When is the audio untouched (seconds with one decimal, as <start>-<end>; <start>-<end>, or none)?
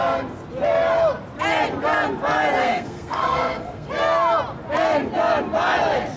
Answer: 0.0-2.6; 3.9-6.2